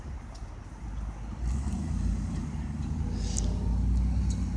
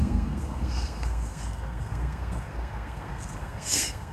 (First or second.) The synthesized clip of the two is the second